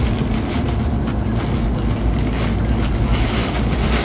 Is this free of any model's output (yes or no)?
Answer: yes